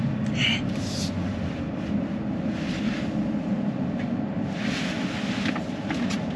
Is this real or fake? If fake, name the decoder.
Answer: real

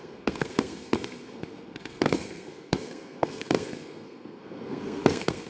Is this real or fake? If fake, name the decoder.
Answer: fake, codec, SNAC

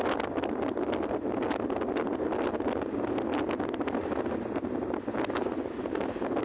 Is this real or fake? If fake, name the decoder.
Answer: real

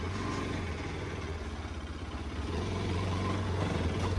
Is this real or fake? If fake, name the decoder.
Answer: fake, vocoder, Vocos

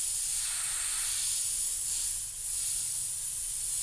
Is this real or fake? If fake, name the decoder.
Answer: real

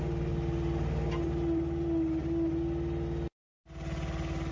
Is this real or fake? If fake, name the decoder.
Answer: real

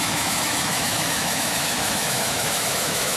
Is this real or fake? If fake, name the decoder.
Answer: fake, autoencoder, DAC-VAE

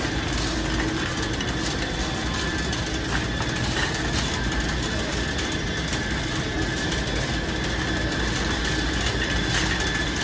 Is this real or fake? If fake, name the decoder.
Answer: real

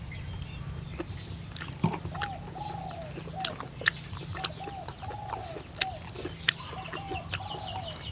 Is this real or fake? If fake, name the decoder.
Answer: real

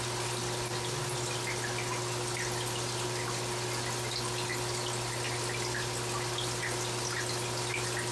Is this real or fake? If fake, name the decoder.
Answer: real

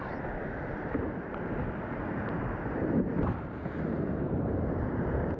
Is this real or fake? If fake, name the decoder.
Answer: real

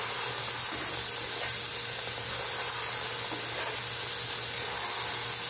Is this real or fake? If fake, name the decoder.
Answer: real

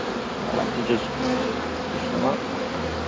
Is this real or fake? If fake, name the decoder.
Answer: real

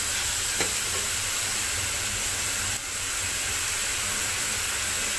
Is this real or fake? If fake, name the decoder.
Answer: real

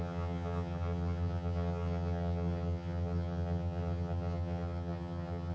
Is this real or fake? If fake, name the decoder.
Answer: fake, vocoder, HiFi-GAN